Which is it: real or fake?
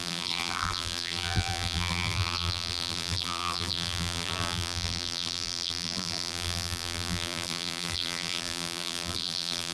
fake